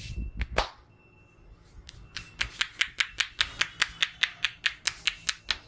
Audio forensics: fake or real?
real